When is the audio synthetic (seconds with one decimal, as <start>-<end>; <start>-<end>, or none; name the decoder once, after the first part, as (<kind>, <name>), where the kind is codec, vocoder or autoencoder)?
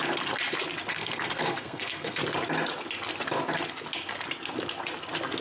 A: 0.9-2.2 (codec, SNAC)